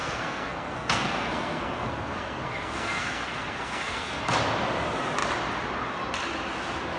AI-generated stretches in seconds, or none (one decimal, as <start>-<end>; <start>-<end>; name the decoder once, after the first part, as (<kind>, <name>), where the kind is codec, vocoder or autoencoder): 0.0-4.2 (codec, SNAC)

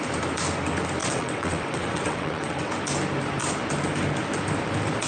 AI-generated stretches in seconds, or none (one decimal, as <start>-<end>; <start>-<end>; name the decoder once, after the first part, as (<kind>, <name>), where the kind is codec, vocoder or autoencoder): 1.0-2.7 (vocoder, WaveNeXt)

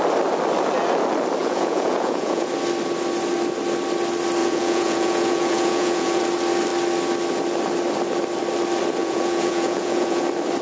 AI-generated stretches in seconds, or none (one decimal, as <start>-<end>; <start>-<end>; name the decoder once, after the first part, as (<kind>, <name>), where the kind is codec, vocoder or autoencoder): 1.4-2.5 (vocoder, Vocos); 4.4-6.2; 9.0-10.2

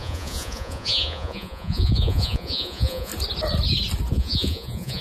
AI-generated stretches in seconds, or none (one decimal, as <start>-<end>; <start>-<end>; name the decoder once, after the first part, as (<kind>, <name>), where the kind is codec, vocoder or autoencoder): 0.0-3.1 (vocoder, Vocos); 4.1-5.0